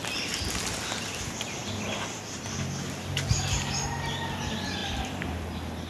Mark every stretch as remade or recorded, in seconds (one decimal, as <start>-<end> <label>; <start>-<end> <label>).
0.0-5.9 recorded